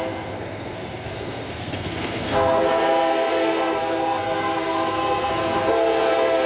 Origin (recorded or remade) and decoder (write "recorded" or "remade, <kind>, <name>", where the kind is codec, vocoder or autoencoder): remade, codec, SNAC